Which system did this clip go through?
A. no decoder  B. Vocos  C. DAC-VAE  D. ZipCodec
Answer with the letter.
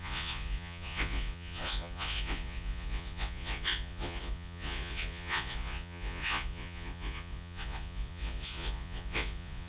B